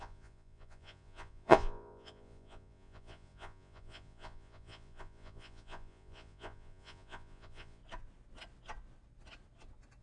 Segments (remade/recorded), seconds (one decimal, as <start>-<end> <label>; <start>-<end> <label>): 0.0-7.8 remade; 7.8-10.0 recorded

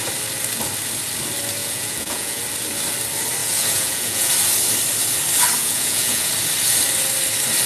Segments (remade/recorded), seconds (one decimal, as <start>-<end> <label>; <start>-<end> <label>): 0.0-1.6 recorded; 1.6-2.4 remade; 2.4-3.4 recorded; 3.4-4.3 remade; 4.3-5.6 recorded; 5.6-6.3 remade; 6.3-7.7 recorded

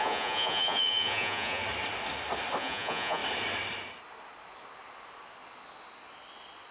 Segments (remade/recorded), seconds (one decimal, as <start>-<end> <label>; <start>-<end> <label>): 0.0-1.6 remade; 1.6-2.6 recorded; 2.6-3.2 remade; 3.2-6.7 recorded

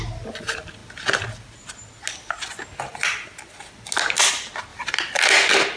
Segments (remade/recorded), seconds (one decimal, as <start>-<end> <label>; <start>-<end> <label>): 0.0-5.8 recorded

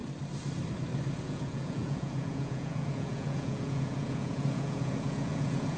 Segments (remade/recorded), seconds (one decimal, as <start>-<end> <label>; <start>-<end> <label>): 0.0-1.2 recorded; 1.2-5.8 remade